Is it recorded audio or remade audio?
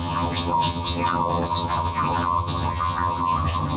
remade